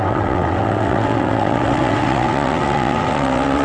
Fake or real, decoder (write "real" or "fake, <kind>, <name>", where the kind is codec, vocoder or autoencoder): fake, vocoder, WaveNeXt